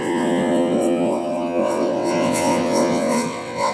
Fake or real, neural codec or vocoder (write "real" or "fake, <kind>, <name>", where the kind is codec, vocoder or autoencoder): fake, vocoder, WaveNeXt